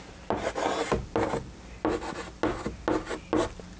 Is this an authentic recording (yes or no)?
yes